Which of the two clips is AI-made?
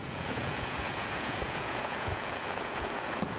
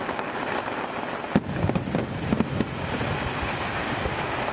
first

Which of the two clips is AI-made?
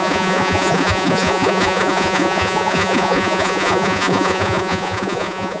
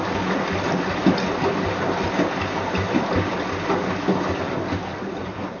first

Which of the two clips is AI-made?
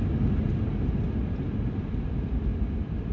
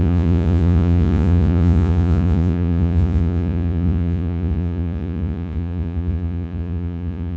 second